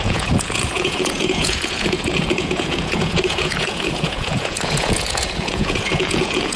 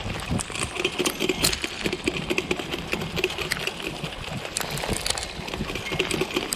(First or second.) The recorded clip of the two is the second